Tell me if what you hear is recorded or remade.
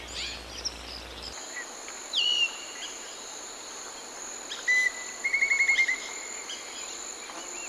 recorded